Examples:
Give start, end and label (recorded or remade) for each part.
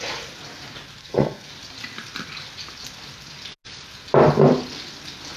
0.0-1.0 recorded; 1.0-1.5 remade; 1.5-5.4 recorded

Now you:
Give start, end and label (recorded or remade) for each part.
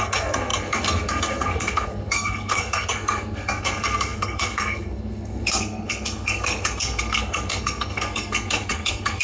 0.0-9.2 remade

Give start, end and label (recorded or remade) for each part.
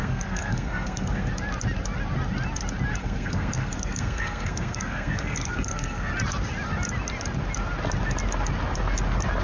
0.0-1.3 remade; 1.3-3.0 recorded; 3.0-6.1 remade; 6.1-9.4 recorded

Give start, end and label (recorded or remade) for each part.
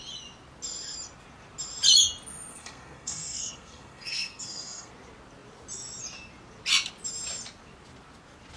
0.0-2.5 recorded; 2.5-4.9 remade; 4.9-8.6 recorded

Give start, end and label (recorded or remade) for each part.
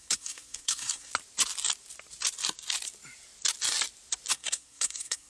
0.0-1.1 remade; 1.1-4.3 recorded; 4.3-5.3 remade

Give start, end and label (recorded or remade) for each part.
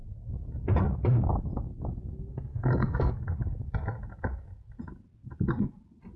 0.0-2.5 recorded; 2.5-3.1 remade; 3.1-6.2 recorded